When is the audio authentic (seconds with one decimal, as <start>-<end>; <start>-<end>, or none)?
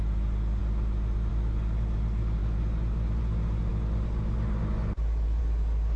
0.0-6.0